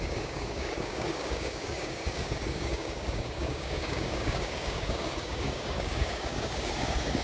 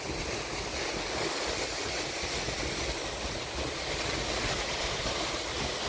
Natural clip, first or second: second